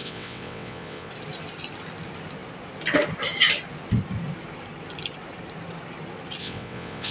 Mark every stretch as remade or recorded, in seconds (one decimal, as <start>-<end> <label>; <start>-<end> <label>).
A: 0.0-1.1 remade; 1.1-6.4 recorded; 6.4-7.1 remade